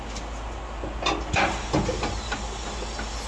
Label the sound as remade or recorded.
recorded